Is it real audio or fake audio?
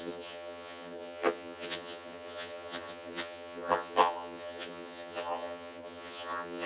fake